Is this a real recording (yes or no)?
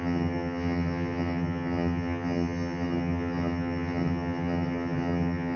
no